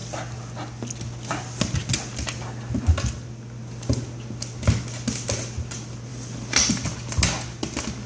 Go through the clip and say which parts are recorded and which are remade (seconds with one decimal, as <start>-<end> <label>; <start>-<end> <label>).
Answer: 0.0-6.1 recorded; 6.1-6.7 remade; 6.7-8.1 recorded